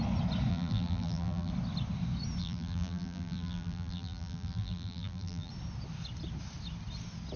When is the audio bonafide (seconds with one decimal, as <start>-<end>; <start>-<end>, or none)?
0.0-0.5; 1.5-2.4; 5.5-7.4